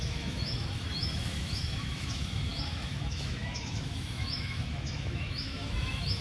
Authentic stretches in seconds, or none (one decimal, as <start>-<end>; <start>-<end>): none